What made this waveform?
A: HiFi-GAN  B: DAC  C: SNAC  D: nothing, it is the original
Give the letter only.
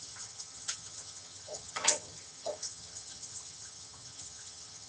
A